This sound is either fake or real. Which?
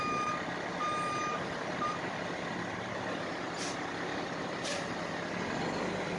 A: fake